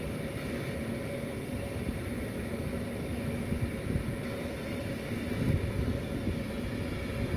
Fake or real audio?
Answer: real